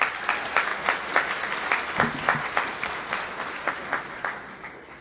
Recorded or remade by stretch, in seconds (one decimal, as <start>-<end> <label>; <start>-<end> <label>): 0.0-5.0 recorded